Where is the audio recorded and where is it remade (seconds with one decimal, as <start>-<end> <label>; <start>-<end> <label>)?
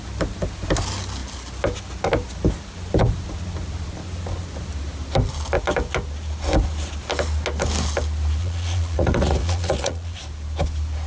0.0-8.4 recorded; 8.4-10.2 remade; 10.2-11.1 recorded